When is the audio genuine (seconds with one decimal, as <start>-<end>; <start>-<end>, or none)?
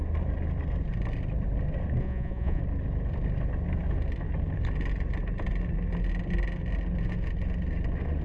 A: 0.0-2.0; 2.6-8.2